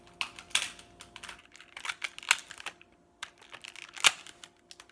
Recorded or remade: recorded